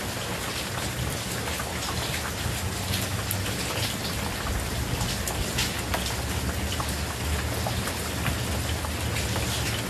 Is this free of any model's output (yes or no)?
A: yes